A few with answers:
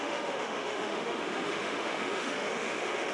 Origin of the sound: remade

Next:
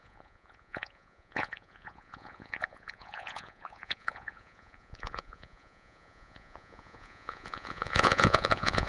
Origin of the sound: remade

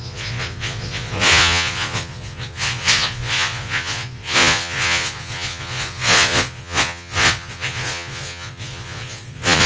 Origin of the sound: remade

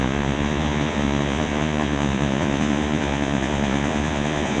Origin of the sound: remade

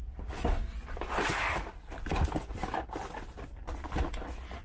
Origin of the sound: recorded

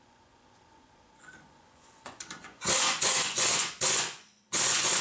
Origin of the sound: remade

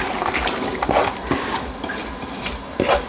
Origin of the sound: recorded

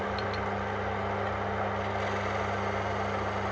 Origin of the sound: recorded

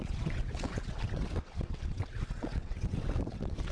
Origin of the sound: remade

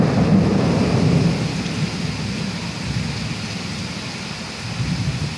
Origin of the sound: recorded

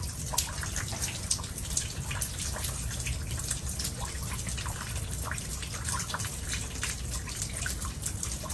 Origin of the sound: remade